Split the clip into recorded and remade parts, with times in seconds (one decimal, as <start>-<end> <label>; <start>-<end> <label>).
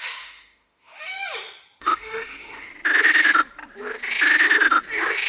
0.0-1.1 remade; 1.1-1.8 recorded; 1.8-2.7 remade; 2.7-5.3 recorded